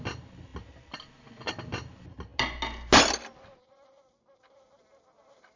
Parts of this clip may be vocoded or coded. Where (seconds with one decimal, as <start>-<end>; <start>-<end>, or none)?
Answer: none